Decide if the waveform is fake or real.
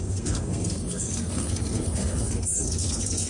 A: fake